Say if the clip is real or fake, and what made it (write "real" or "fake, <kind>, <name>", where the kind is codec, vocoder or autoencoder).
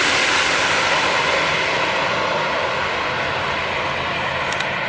real